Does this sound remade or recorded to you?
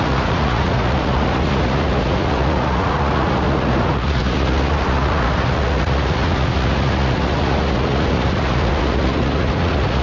remade